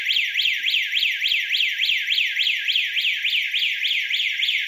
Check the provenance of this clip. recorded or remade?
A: recorded